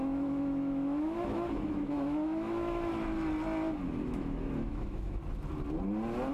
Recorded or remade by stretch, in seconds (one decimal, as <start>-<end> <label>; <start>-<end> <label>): 0.0-2.9 remade; 2.9-3.9 recorded; 3.9-5.2 remade; 5.2-6.3 recorded